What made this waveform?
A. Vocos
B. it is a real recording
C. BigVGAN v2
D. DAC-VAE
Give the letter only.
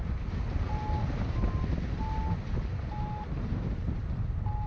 B